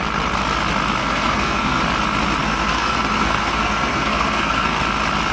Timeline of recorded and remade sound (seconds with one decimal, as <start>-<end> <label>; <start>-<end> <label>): 0.0-1.0 recorded; 1.0-1.8 remade; 1.8-2.4 recorded; 2.4-4.8 remade; 4.8-5.3 recorded